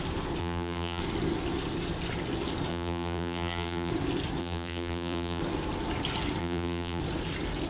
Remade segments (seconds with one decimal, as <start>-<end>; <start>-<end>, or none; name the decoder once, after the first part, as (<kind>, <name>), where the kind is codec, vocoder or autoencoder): 0.4-1.0 (vocoder, BigVGAN v2); 2.7-3.9; 4.4-5.4; 6.4-7.0